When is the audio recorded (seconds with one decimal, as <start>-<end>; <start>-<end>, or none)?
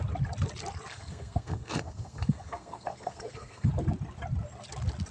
0.0-0.9; 3.7-5.1